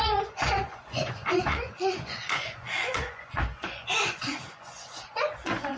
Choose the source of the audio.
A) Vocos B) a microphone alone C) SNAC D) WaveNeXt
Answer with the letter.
A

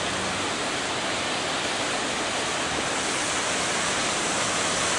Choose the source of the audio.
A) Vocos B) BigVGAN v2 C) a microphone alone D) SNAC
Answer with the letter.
C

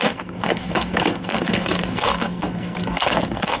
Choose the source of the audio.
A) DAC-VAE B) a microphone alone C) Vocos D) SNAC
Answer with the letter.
D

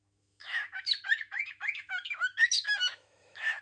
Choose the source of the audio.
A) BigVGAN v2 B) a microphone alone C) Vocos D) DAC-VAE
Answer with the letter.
D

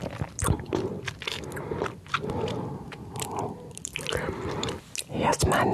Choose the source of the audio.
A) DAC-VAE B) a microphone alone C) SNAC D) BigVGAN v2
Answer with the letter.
B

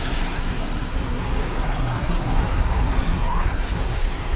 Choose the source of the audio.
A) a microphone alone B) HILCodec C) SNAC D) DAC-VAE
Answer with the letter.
C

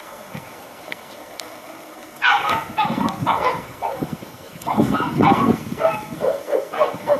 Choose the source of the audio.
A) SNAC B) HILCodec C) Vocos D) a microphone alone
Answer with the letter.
A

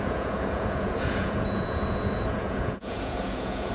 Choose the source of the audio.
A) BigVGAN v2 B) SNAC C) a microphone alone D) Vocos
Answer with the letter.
D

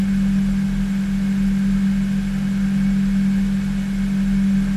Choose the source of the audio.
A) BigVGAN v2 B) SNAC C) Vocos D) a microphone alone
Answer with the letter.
D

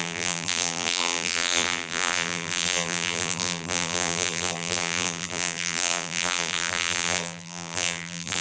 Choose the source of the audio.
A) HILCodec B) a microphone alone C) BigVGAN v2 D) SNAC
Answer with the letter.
C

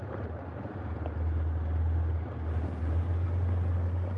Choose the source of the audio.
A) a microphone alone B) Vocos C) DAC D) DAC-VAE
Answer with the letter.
A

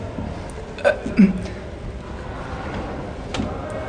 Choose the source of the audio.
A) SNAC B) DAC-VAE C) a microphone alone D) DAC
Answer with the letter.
C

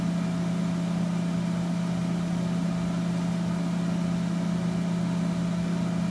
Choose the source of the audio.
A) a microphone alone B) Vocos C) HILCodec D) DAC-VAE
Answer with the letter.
A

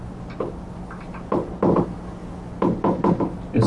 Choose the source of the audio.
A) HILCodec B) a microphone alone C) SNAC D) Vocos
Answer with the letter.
B